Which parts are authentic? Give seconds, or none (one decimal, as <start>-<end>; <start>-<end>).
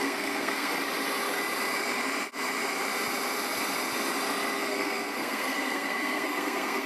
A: 0.7-4.7